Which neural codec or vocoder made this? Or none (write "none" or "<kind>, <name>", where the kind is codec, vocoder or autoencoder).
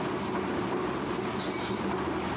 none